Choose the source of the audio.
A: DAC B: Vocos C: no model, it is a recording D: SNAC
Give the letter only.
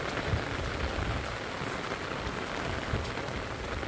C